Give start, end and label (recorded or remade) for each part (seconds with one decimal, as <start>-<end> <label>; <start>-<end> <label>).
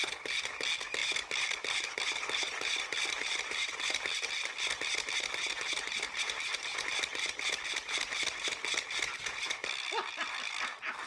0.0-1.0 recorded; 1.0-4.3 remade; 4.3-6.7 recorded; 6.7-7.3 remade; 7.3-9.6 recorded; 9.6-11.1 remade